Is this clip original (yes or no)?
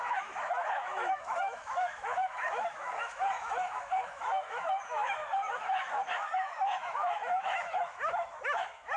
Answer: no